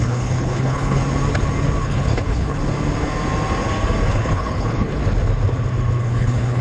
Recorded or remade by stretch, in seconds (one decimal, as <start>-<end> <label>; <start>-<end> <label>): 0.0-1.0 remade; 1.0-1.8 recorded; 1.8-2.6 remade; 2.6-4.1 recorded; 4.1-5.0 remade; 5.0-6.0 recorded; 6.0-6.6 remade